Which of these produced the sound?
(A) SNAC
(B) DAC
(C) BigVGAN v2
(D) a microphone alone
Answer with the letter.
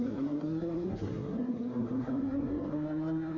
A